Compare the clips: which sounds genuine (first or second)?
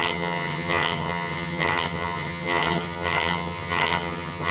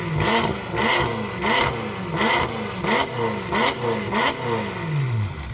second